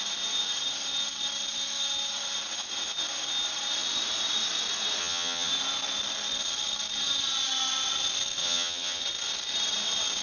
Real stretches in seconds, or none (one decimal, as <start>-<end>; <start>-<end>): 0.0-5.0; 5.5-8.4; 9.0-10.2